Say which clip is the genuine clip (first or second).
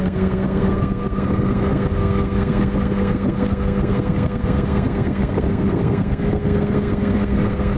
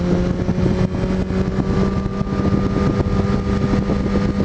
second